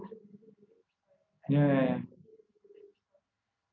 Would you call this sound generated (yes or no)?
no